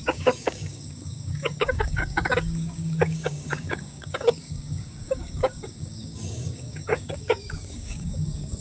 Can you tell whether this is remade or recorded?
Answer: remade